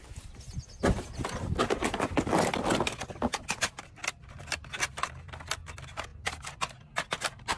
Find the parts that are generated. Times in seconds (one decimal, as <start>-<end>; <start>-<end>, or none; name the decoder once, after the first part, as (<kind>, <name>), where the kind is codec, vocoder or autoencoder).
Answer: none